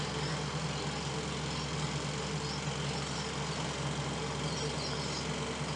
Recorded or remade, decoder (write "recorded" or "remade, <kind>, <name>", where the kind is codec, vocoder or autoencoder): recorded